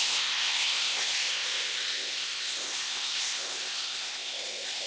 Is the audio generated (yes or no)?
yes